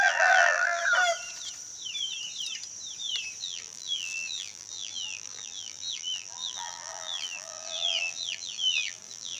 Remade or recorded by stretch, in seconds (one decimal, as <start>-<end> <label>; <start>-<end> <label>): 0.0-0.8 remade; 0.8-3.4 recorded; 3.4-9.4 remade